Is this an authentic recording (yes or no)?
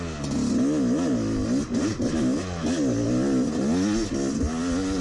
yes